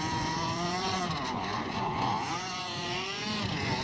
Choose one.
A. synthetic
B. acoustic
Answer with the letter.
A